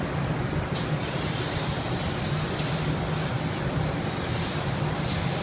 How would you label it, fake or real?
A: real